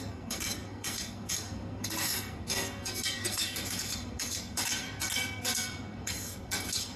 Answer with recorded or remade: remade